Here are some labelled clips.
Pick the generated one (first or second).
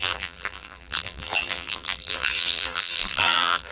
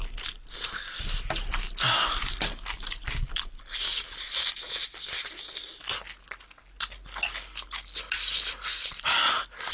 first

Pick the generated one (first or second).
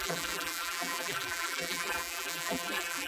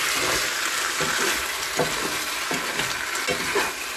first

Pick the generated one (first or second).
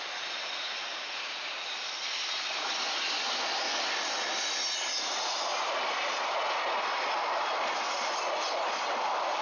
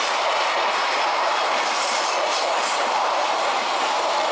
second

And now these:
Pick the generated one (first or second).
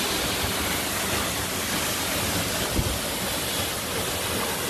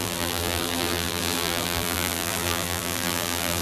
second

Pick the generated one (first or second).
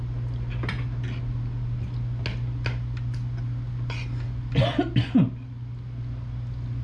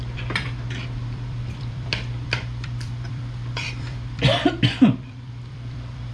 second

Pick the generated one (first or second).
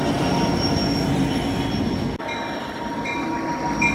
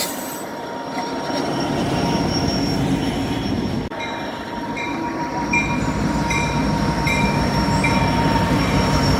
second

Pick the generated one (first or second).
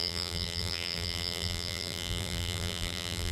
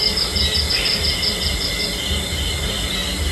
first